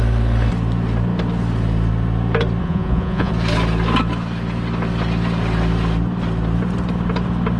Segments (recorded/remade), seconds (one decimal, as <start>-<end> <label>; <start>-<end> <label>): 0.0-2.6 recorded; 2.6-3.3 remade; 3.3-7.6 recorded